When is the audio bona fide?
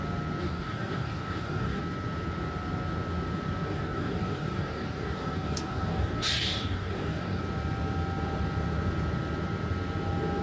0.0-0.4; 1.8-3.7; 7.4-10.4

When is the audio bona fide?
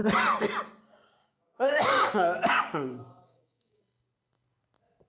0.0-1.2; 3.8-5.1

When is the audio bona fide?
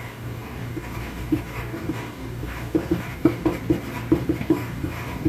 3.5-4.4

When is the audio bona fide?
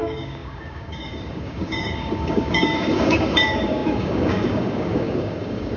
none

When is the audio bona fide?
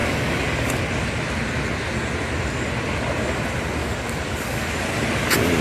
0.8-3.8; 4.7-5.6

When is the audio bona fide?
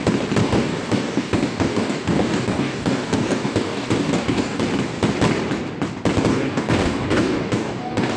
0.0-0.4; 4.6-6.3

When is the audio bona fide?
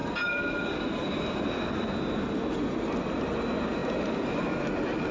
0.0-5.1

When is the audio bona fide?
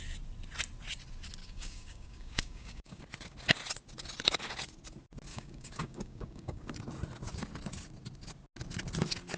0.0-1.4; 3.0-5.3; 6.7-9.4